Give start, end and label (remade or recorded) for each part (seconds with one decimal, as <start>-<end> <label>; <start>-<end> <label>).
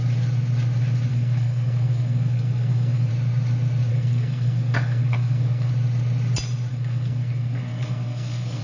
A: 0.0-1.1 recorded; 1.1-3.1 remade; 3.1-3.9 recorded; 3.9-5.7 remade; 5.7-6.7 recorded; 6.7-8.6 remade